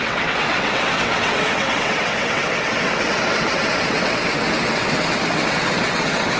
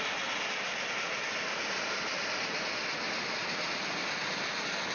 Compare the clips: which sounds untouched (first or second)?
second